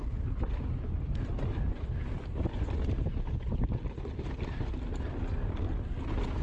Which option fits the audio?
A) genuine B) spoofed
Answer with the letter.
A